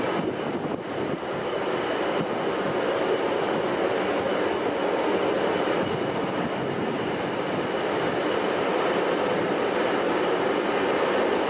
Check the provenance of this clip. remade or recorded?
recorded